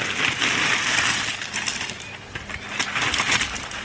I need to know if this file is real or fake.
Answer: real